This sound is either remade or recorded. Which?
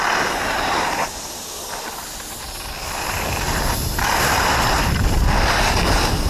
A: recorded